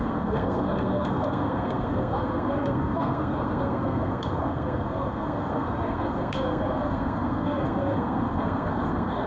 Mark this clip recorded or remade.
remade